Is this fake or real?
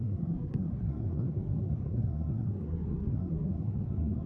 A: fake